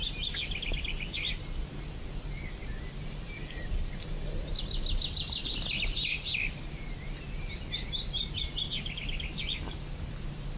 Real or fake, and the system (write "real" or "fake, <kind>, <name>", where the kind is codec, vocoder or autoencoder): fake, vocoder, BigVGAN v2